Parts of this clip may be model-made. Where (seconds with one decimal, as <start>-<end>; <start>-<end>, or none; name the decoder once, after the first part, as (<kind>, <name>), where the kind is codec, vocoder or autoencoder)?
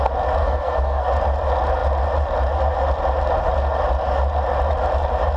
0.4-1.1 (codec, SNAC)